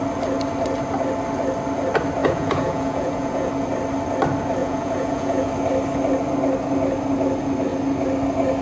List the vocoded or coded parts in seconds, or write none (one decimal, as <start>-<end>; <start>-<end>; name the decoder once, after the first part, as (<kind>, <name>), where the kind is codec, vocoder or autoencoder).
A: 2.2-3.5 (vocoder, Vocos); 4.6-5.5